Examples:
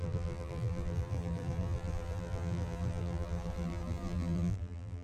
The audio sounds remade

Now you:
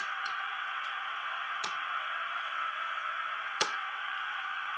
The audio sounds remade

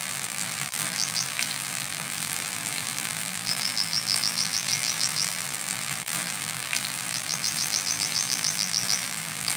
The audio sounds remade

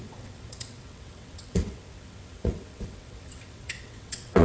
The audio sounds remade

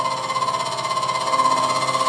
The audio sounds recorded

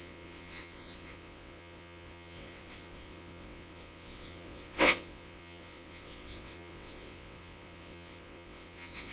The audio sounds remade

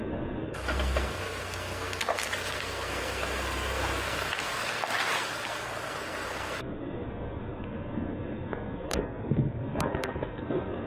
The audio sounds remade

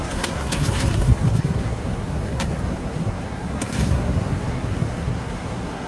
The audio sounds remade